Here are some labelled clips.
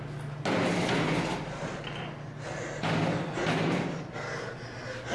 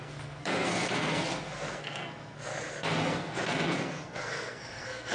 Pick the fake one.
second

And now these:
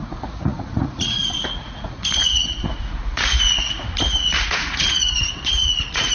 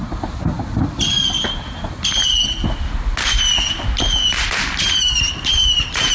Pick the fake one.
first